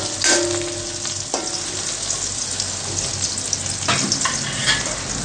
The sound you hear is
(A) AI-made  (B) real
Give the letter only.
B